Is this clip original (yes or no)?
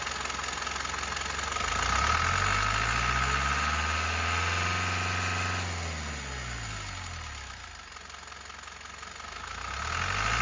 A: yes